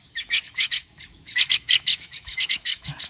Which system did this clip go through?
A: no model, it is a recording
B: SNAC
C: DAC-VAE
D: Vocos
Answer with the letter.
C